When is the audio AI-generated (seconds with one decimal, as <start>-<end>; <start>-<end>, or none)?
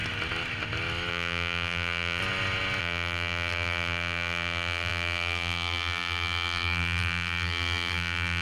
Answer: 1.1-2.2; 2.8-8.4